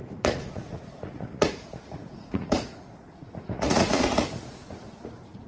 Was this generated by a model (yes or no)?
yes